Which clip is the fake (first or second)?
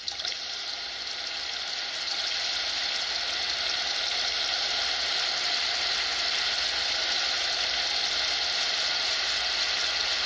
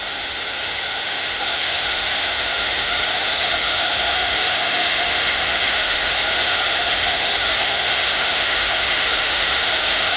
second